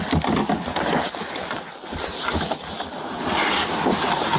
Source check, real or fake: real